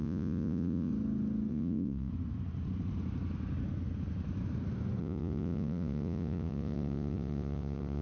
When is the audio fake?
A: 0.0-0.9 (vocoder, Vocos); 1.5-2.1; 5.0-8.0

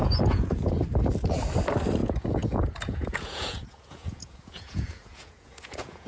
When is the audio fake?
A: 0.0-0.7 (vocoder, Vocos); 2.0-6.1

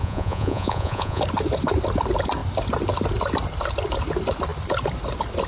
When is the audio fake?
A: 0.0-1.2 (vocoder, Vocos)

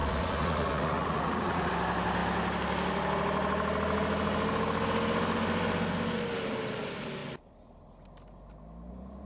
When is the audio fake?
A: 0.0-1.7 (vocoder, Vocos)

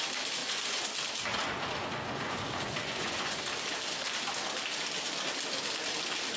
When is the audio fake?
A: 0.4-0.9 (vocoder, Vocos); 1.3-3.4

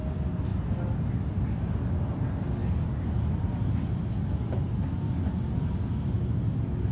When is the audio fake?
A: none